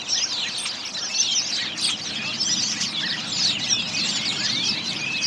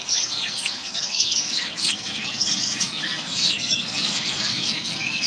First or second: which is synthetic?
second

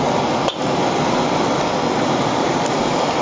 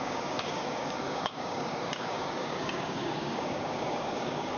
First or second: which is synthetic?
second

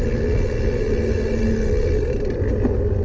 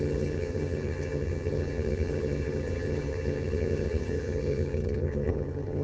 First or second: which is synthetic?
second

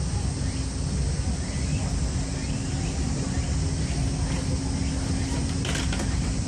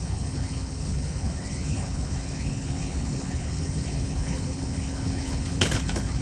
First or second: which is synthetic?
second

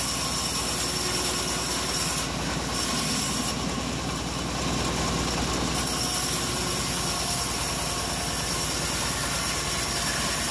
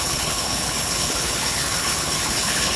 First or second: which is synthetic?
second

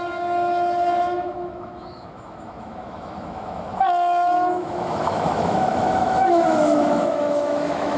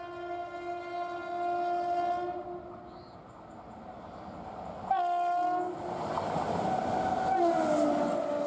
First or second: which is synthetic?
first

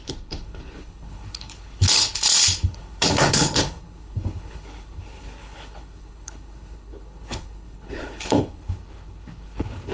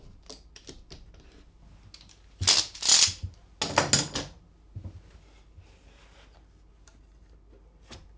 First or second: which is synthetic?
first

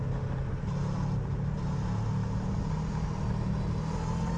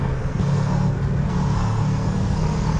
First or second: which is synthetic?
second